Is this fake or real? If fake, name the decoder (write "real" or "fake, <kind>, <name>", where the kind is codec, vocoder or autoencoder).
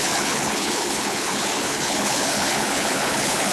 fake, codec, HILCodec